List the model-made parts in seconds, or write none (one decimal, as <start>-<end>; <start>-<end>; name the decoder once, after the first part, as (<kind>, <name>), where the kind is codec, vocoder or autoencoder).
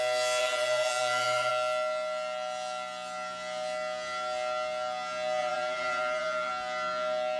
0.4-1.5 (vocoder, BigVGAN v2); 5.4-6.5